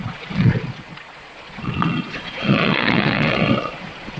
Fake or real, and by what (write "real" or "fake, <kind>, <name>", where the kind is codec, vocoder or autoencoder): fake, vocoder, Vocos